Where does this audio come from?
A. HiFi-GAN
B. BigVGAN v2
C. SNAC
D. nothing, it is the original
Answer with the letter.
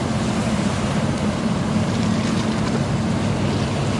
D